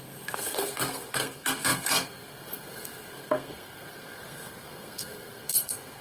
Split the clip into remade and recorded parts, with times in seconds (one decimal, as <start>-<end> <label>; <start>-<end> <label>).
0.0-6.0 remade